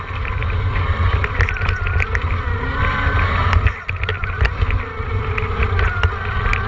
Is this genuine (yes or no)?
yes